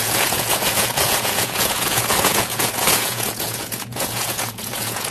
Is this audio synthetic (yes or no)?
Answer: yes